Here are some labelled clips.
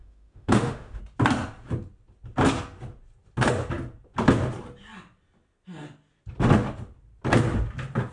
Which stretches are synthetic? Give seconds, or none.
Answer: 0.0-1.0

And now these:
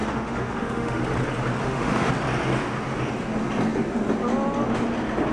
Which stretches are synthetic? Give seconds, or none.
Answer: 0.0-1.0; 1.6-2.1

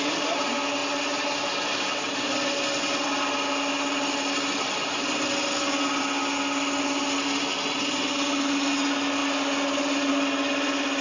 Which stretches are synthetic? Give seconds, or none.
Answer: none

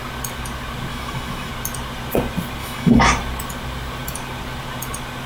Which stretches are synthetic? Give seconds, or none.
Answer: 0.9-1.5; 2.6-3.1